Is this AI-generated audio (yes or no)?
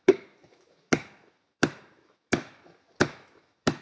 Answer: yes